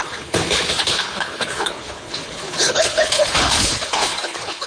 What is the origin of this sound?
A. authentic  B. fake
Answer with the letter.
B